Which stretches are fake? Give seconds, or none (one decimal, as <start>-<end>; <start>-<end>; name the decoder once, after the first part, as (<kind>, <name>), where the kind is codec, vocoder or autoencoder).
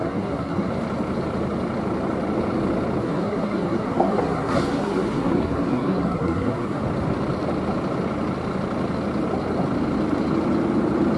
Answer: 0.0-0.7 (codec, SNAC); 3.0-6.8